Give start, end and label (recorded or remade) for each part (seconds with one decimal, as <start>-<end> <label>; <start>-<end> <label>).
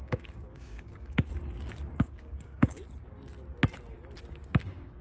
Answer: 0.0-1.3 remade; 1.3-2.0 recorded; 2.0-2.8 remade; 2.8-4.3 recorded; 4.3-5.0 remade